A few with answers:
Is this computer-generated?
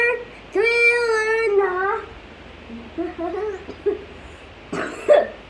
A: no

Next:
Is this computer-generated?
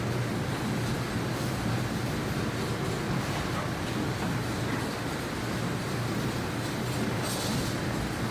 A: no